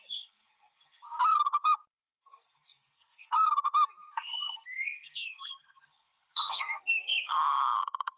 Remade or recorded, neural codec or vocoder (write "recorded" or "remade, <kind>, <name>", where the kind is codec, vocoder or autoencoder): remade, codec, SNAC